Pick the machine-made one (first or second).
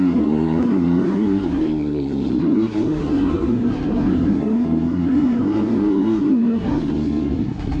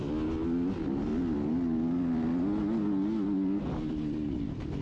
first